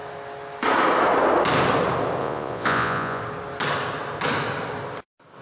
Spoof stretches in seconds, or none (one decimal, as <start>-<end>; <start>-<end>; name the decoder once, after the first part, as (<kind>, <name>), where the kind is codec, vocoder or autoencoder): 2.2-3.2 (vocoder, Vocos)

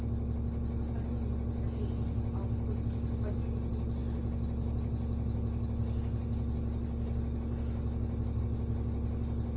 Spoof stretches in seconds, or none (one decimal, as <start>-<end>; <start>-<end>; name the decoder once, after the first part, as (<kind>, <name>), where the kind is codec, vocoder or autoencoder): none

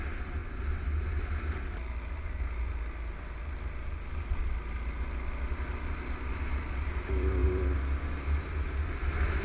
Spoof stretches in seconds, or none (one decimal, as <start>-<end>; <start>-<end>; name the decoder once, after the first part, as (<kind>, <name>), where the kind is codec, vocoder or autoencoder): none

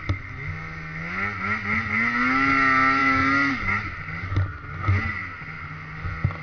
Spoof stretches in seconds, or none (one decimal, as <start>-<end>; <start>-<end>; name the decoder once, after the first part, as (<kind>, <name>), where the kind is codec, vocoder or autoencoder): none

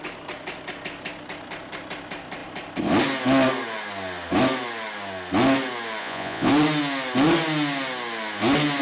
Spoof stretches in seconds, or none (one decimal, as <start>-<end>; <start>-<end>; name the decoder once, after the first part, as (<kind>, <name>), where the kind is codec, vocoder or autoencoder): 6.0-6.5 (vocoder, Vocos)

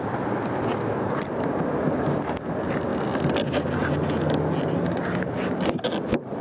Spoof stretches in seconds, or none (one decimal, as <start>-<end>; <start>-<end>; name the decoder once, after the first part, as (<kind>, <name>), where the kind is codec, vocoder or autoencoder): none

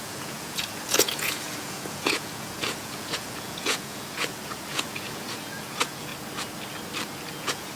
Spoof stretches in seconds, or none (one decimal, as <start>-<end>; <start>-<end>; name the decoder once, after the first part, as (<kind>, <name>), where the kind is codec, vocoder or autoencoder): 0.0-6.1 (vocoder, Vocos); 7.3-7.8